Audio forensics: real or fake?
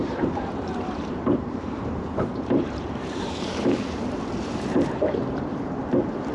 fake